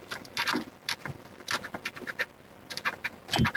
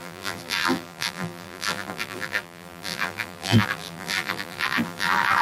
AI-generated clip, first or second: second